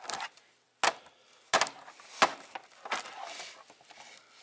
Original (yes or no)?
yes